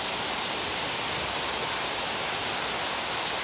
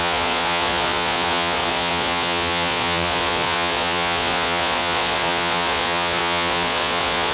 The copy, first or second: second